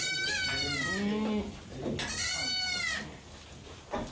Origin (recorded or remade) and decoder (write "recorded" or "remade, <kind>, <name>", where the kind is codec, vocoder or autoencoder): recorded